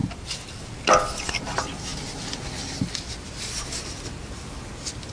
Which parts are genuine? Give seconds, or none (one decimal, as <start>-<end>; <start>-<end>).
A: 0.0-5.1